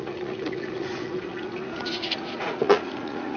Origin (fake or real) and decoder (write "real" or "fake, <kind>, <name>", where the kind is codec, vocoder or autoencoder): fake, vocoder, Vocos